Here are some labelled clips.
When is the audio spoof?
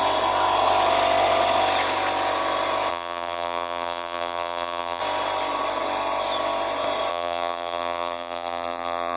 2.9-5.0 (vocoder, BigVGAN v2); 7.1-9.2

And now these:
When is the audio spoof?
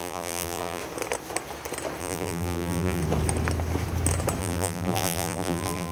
0.0-0.8 (vocoder, BigVGAN v2); 2.0-3.0; 4.4-5.9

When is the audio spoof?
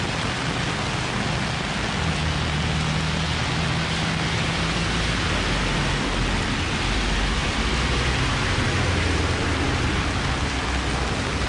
7.4-9.0 (vocoder, BigVGAN v2)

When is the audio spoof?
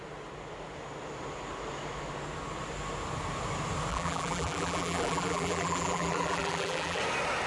3.9-7.0 (vocoder, BigVGAN v2)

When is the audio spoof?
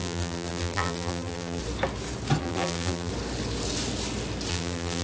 0.0-1.6 (vocoder, BigVGAN v2); 2.4-3.1; 4.5-5.0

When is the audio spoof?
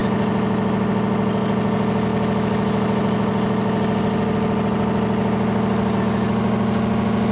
none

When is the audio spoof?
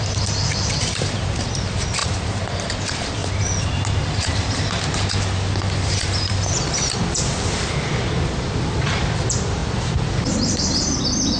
0.0-3.2 (vocoder, BigVGAN v2); 5.9-9.6; 10.6-11.4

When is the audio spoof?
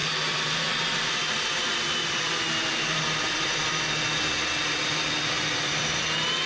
0.0-3.8 (vocoder, BigVGAN v2)